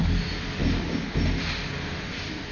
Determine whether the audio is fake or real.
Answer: real